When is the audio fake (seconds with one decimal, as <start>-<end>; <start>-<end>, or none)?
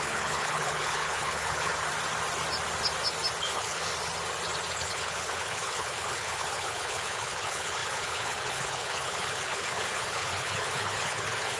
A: 0.0-1.7; 3.4-3.9; 4.7-11.6